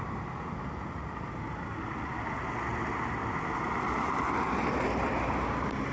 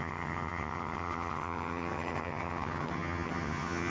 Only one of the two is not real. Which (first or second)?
second